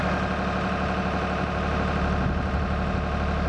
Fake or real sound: real